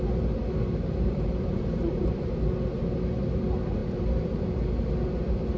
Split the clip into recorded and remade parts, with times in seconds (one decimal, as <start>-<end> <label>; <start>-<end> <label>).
0.0-0.6 recorded; 0.6-2.3 remade; 2.3-5.6 recorded